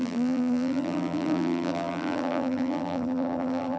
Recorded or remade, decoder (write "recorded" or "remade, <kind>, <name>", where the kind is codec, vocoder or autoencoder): remade, vocoder, BigVGAN v2